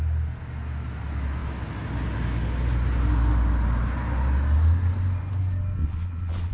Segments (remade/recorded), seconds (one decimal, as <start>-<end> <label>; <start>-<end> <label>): 0.0-5.8 recorded; 5.8-6.5 remade

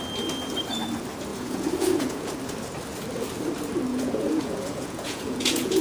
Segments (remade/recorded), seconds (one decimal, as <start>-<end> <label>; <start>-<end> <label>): 0.0-1.3 recorded; 1.3-2.4 remade; 2.4-3.9 recorded; 3.9-5.8 remade

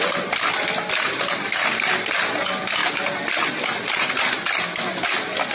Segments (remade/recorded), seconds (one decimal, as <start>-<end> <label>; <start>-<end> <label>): 0.0-5.5 recorded

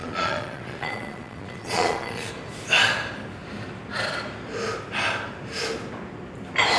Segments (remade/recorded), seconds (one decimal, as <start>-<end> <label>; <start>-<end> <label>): 0.0-2.3 remade; 2.3-6.8 recorded

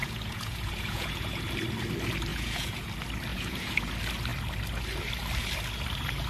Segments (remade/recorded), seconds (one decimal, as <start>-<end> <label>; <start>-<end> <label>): 0.0-1.5 remade; 1.5-2.3 recorded; 2.3-2.9 remade; 2.9-3.3 recorded; 3.3-3.9 remade; 3.9-6.3 recorded

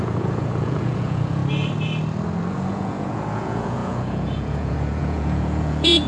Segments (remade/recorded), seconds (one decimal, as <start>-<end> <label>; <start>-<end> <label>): 0.0-1.4 remade; 1.4-2.5 recorded; 2.5-6.1 remade

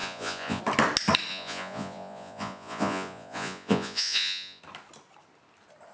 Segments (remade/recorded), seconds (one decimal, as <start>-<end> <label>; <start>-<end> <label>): 0.0-0.6 remade; 0.6-1.3 recorded; 1.3-4.6 remade; 4.6-5.9 recorded